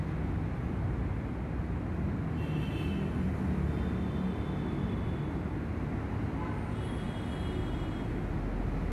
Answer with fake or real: real